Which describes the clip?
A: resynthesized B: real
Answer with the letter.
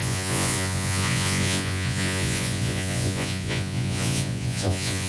A